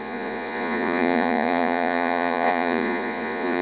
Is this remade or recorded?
remade